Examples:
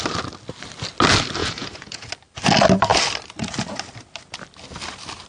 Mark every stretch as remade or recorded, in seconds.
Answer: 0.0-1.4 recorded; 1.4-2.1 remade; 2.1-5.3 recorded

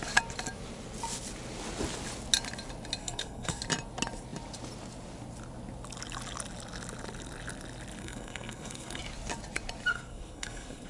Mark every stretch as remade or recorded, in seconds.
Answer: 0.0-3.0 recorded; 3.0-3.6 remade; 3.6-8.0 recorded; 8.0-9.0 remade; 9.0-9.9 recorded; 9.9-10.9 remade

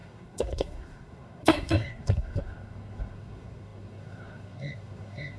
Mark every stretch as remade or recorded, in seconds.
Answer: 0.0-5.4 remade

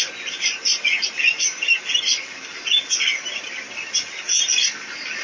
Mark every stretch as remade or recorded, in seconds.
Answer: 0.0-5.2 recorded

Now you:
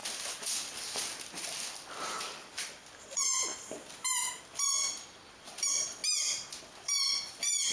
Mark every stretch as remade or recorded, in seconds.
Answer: 0.0-3.5 remade; 3.5-4.4 recorded; 4.4-6.0 remade; 6.0-6.6 recorded; 6.6-7.7 remade

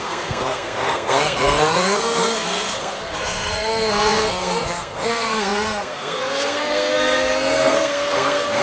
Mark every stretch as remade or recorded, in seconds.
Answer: 0.0-8.6 remade

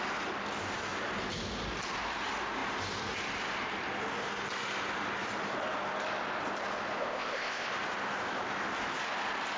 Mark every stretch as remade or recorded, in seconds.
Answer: 0.0-7.0 recorded; 7.0-7.7 remade; 7.7-9.6 recorded